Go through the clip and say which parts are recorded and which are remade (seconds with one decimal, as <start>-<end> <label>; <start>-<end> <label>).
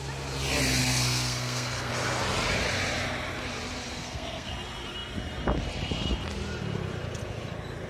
0.0-0.8 recorded; 0.8-1.9 remade; 1.9-3.9 recorded; 3.9-4.5 remade; 4.5-7.9 recorded